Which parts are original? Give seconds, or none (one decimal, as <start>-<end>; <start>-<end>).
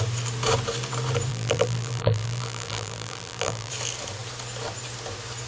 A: 0.0-1.3; 3.7-5.5